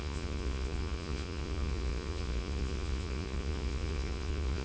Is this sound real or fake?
fake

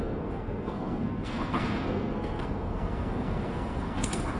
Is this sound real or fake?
fake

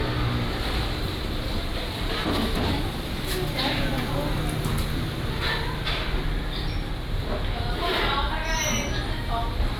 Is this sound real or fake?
real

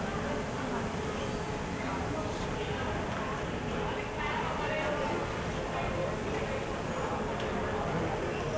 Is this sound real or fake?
real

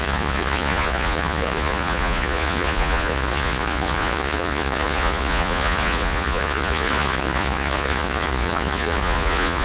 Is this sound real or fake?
fake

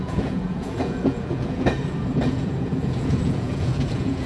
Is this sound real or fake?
fake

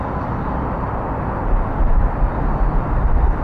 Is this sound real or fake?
real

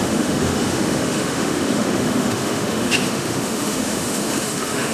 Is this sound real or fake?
fake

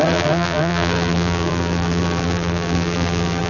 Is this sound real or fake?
fake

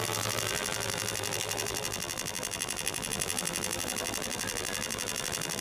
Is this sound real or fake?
fake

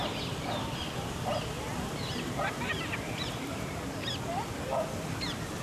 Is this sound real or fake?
fake